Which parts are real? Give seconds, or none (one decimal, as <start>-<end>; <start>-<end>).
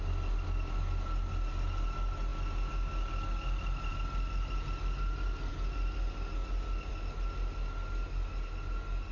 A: 0.0-9.1